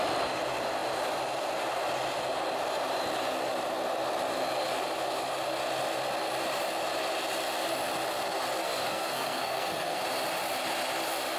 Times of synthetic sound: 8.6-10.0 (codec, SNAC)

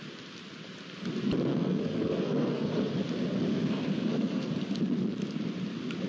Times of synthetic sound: 1.5-2.7 (codec, SNAC); 3.5-4.5

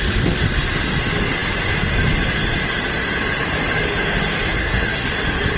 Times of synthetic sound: 4.5-5.1 (codec, SNAC)

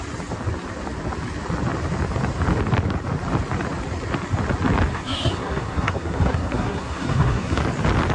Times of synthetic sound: 4.9-7.6 (codec, SNAC)

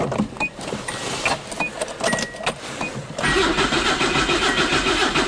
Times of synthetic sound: none

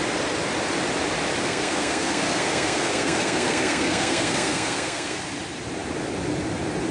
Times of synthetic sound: 1.4-5.2 (codec, SNAC)

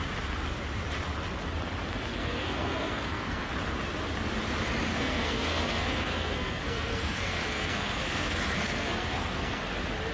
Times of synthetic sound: 2.1-3.5 (codec, SNAC); 4.9-9.6